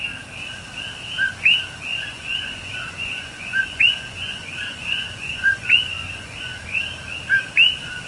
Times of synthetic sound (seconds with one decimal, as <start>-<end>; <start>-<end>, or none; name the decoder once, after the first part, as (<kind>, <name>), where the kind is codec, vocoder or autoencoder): 1.9-6.8 (vocoder, Vocos)